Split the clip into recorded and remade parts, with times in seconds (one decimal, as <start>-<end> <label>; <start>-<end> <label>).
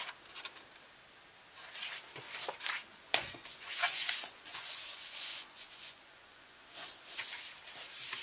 0.0-2.9 recorded; 2.9-7.3 remade; 7.3-8.2 recorded